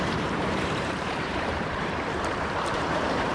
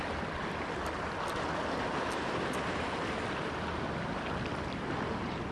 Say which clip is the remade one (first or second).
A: first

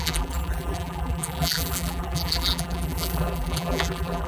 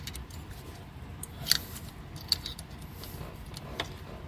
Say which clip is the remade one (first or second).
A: first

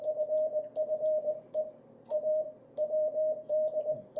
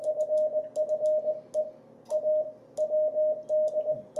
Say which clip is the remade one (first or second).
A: first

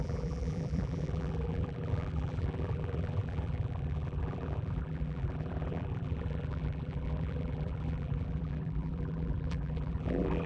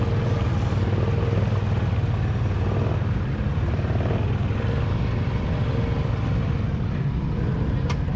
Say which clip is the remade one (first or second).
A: first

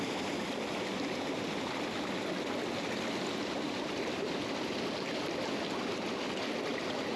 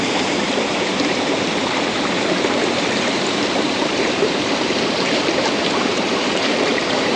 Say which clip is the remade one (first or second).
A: second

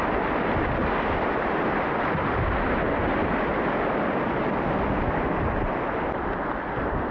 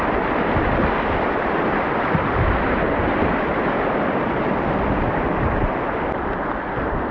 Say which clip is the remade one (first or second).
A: second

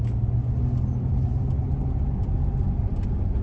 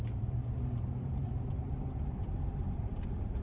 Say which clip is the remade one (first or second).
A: second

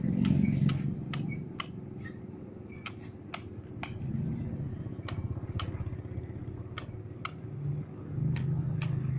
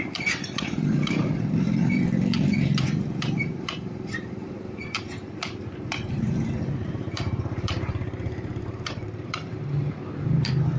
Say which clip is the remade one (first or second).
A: second